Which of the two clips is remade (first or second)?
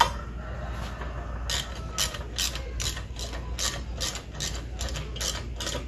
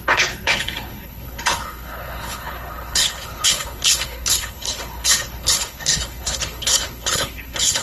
second